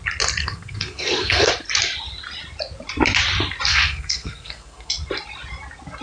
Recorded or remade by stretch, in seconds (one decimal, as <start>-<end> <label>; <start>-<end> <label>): 0.0-0.4 recorded; 0.4-1.5 remade; 1.5-3.7 recorded; 3.7-4.9 remade; 4.9-6.0 recorded